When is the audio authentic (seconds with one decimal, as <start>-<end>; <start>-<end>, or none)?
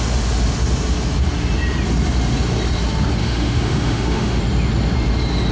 0.0-3.2; 4.4-5.5